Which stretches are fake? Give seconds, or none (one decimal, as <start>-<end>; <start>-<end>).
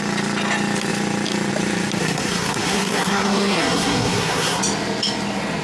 2.0-4.6